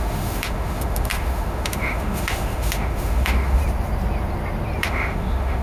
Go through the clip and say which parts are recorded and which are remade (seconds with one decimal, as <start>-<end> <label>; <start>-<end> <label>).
0.0-3.6 remade; 3.6-4.8 recorded; 4.8-5.6 remade